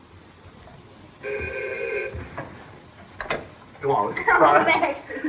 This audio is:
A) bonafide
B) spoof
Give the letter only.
A